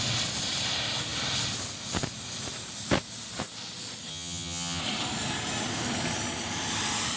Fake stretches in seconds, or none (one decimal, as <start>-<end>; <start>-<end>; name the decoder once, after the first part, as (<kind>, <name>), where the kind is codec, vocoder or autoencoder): 4.1-4.8 (vocoder, HiFi-GAN)